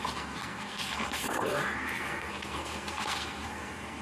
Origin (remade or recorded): remade